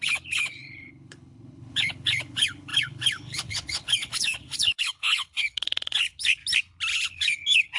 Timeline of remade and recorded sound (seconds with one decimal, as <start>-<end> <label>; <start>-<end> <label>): 0.0-6.4 remade; 6.4-6.9 recorded; 6.9-7.8 remade